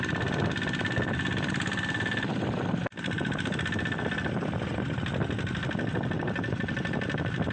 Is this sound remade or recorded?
recorded